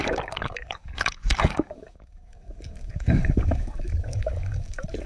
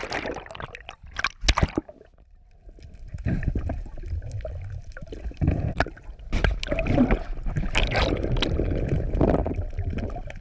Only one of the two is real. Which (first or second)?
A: second